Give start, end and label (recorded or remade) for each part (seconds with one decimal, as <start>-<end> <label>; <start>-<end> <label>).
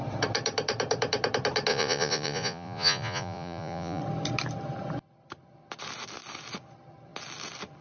0.0-1.7 recorded; 1.7-4.0 remade; 4.0-7.8 recorded